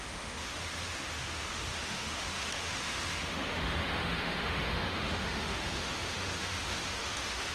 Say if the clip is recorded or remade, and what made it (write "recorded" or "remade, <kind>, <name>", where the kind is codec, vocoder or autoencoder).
remade, autoencoder, DAC-VAE